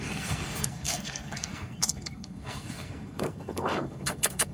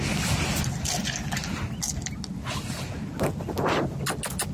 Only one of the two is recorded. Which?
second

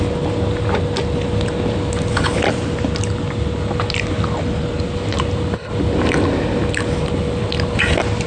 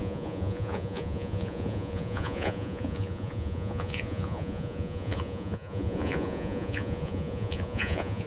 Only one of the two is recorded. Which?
first